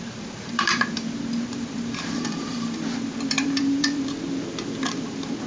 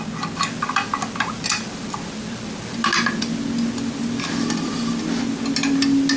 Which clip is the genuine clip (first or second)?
second